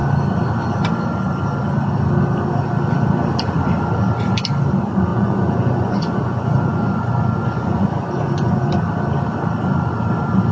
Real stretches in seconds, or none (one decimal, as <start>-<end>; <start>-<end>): 0.0-5.1; 8.8-10.5